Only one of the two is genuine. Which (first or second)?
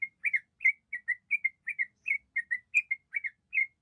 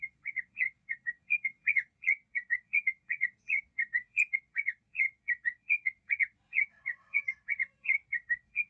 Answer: first